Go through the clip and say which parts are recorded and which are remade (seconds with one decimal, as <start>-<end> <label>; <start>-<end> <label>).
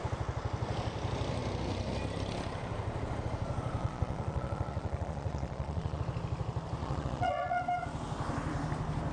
0.0-3.8 recorded; 3.8-6.0 remade; 6.0-6.8 recorded; 6.8-7.6 remade; 7.6-9.1 recorded